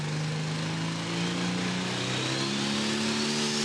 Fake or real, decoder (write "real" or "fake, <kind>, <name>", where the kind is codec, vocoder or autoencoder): real